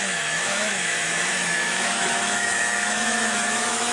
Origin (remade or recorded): remade